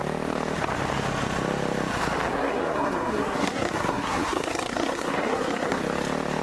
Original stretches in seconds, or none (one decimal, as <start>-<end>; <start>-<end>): 0.0-2.3; 5.8-6.4